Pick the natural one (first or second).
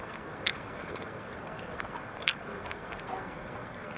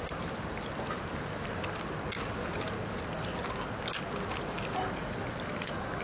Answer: second